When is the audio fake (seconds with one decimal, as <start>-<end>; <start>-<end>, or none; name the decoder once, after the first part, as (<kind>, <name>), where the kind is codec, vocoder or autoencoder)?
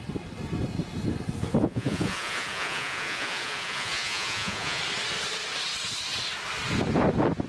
1.6-4.8 (vocoder, Vocos)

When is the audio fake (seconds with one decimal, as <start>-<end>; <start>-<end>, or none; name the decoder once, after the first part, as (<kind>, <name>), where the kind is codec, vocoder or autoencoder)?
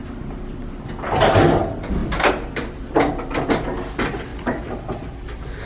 none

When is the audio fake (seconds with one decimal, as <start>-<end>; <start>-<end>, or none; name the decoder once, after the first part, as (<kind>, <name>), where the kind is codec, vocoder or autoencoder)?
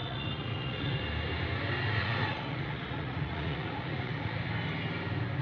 0.0-1.0 (vocoder, Vocos); 2.0-4.4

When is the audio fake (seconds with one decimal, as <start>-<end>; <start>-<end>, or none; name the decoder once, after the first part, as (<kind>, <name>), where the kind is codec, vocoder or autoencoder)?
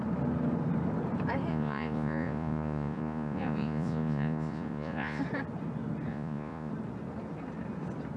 1.5-5.2 (vocoder, Vocos); 6.1-6.7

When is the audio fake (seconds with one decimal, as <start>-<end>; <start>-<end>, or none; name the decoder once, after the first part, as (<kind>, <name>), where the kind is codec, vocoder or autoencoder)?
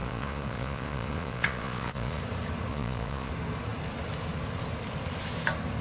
0.0-2.2 (vocoder, Vocos); 2.7-3.3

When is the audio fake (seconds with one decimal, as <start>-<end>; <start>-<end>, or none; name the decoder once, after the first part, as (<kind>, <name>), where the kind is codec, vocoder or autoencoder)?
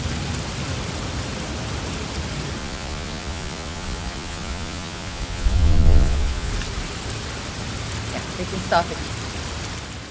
2.6-6.5 (vocoder, Vocos)